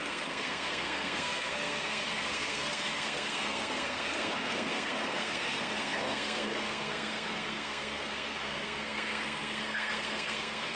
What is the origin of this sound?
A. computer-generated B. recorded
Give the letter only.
A